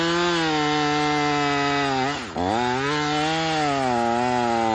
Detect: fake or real real